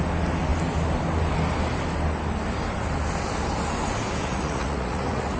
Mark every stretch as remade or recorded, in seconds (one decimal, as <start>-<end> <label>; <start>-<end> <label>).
0.0-4.2 recorded; 4.2-5.4 remade